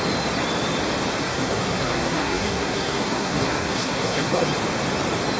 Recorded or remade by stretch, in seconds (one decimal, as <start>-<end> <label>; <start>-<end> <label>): 0.0-1.2 recorded; 1.2-4.4 remade; 4.4-5.4 recorded